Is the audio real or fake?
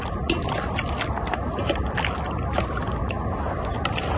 real